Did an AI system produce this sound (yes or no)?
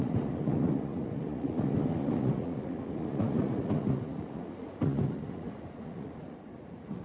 yes